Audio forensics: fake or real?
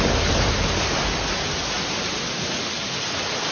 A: real